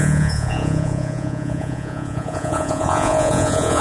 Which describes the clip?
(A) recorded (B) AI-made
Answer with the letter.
B